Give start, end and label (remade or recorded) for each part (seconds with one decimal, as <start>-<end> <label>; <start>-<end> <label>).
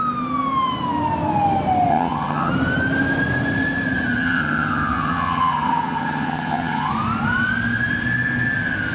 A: 0.0-1.9 recorded; 1.9-2.5 remade; 2.5-4.2 recorded; 4.2-6.9 remade; 6.9-8.9 recorded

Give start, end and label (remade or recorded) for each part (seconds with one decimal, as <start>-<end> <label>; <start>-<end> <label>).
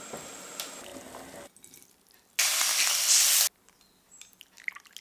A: 0.0-5.0 recorded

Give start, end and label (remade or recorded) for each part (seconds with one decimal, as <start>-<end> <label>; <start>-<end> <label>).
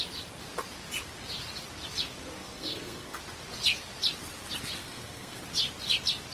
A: 0.0-2.4 recorded; 2.4-3.2 remade; 3.2-4.8 recorded; 4.8-5.4 remade; 5.4-6.3 recorded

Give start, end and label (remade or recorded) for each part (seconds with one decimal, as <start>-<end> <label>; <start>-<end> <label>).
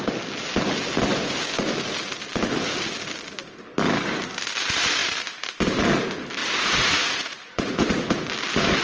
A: 0.0-6.4 recorded; 6.4-8.2 remade; 8.2-8.8 recorded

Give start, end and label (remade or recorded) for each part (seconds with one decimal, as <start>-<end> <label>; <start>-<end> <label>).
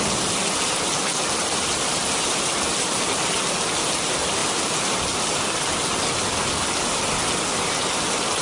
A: 0.0-8.4 recorded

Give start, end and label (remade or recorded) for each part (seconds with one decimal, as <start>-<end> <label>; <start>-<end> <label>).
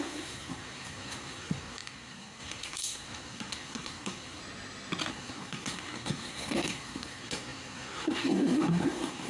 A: 0.0-4.4 remade; 4.4-5.1 recorded; 5.1-9.3 remade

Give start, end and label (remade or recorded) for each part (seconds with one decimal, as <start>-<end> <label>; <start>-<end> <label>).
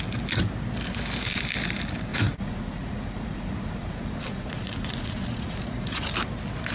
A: 0.0-2.1 recorded; 2.1-6.1 remade; 6.1-6.7 recorded